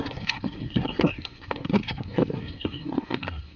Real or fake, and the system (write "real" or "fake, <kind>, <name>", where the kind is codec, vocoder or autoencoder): fake, codec, SNAC